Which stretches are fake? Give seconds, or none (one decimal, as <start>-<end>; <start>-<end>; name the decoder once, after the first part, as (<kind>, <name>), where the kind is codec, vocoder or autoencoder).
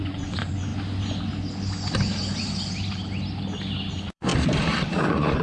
0.0-0.7 (vocoder, Vocos); 3.9-4.3; 4.9-5.4